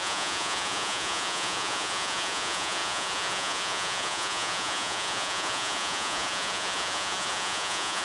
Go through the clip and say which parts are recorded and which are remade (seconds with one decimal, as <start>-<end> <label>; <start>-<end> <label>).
0.0-8.0 remade